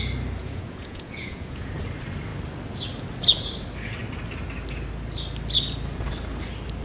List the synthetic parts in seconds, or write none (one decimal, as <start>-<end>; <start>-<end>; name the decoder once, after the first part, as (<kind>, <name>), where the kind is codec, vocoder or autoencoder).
0.4-1.7 (vocoder, Vocos)

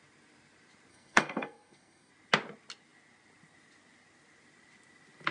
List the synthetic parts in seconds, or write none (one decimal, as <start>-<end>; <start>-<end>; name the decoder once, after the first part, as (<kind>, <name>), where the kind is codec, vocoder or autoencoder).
0.9-2.1 (codec, SNAC)